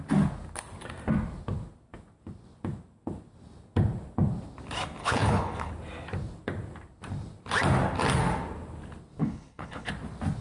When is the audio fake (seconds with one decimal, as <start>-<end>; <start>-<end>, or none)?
5.0-5.7; 9.2-9.9